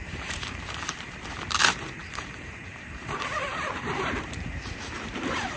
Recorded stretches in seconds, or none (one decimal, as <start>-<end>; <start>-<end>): none